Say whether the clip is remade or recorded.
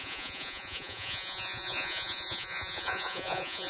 remade